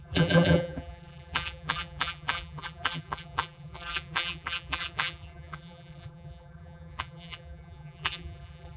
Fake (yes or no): yes